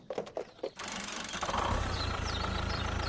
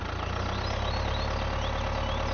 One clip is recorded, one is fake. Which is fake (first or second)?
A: first